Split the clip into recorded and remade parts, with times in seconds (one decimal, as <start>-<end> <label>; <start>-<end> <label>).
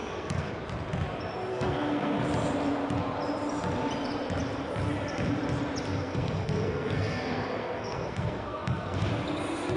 0.0-0.5 remade; 0.5-1.5 recorded; 1.5-2.2 remade; 2.2-5.9 recorded; 5.9-9.1 remade; 9.1-9.8 recorded